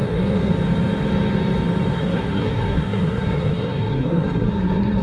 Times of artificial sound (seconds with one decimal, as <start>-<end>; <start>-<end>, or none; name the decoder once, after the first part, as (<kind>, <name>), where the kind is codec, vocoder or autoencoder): 0.0-0.5 (codec, SNAC); 1.9-5.0